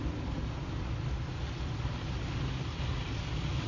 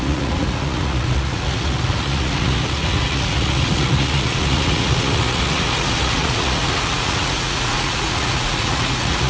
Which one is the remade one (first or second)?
second